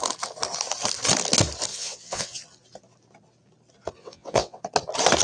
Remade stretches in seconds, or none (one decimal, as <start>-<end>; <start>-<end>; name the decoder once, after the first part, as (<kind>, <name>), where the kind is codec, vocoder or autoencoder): 1.7-2.4 (vocoder, WaveNeXt); 4.0-4.6